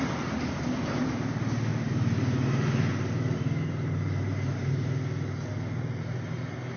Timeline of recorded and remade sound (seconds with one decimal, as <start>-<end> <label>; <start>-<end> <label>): 0.0-6.8 recorded